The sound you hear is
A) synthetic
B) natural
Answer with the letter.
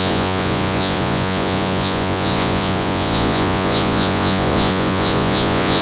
A